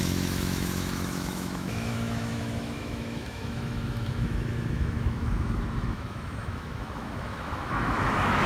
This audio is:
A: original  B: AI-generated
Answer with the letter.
B